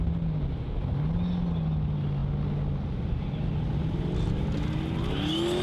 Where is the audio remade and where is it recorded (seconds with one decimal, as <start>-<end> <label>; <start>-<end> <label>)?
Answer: 0.0-5.6 recorded